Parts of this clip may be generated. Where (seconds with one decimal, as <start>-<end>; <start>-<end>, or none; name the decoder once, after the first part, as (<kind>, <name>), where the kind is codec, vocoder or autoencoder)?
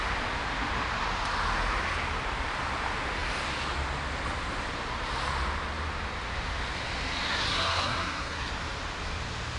7.3-8.5 (codec, SNAC)